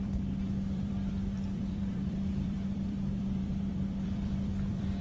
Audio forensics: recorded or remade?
remade